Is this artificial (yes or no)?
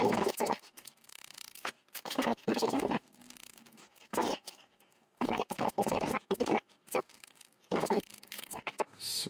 yes